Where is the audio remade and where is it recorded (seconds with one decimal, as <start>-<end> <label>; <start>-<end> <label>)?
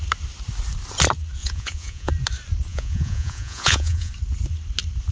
0.0-1.4 recorded; 1.4-2.1 remade; 2.1-2.7 recorded; 2.7-4.1 remade; 4.1-5.1 recorded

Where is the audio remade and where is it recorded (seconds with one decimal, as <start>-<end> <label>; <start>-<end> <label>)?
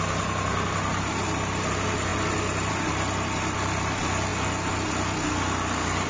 0.0-6.1 recorded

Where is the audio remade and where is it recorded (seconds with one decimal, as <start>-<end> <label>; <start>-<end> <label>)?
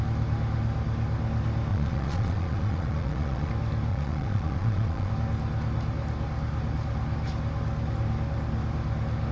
0.0-1.7 recorded; 1.7-3.5 remade; 3.5-3.9 recorded; 3.9-5.1 remade; 5.1-9.3 recorded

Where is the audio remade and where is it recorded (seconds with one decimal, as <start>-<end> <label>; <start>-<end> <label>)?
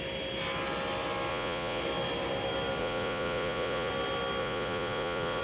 0.0-1.3 recorded; 1.3-1.8 remade; 1.8-2.8 recorded; 2.8-3.9 remade; 3.9-4.4 recorded; 4.4-5.4 remade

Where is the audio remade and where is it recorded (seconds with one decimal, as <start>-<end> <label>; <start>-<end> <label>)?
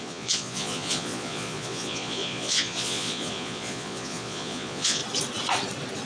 0.0-5.0 remade; 5.0-6.1 recorded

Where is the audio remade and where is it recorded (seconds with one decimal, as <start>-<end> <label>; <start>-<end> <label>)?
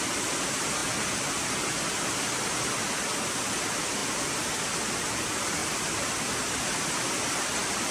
0.0-7.9 recorded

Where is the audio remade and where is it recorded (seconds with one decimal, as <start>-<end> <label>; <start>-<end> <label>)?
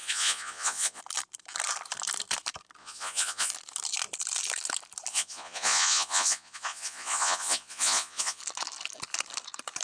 0.0-1.0 remade; 1.0-2.8 recorded; 2.8-3.5 remade; 3.5-5.1 recorded; 5.1-8.4 remade; 8.4-9.8 recorded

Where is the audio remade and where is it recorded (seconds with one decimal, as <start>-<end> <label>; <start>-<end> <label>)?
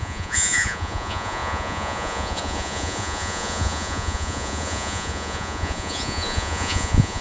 0.0-7.2 remade